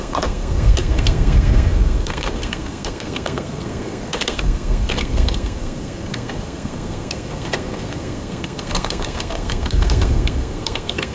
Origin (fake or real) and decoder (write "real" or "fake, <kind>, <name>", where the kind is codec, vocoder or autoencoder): fake, codec, SNAC